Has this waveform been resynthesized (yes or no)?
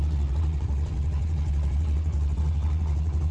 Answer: yes